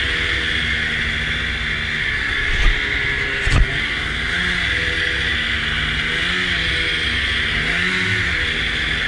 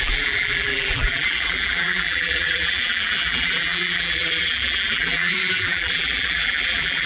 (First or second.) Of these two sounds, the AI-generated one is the second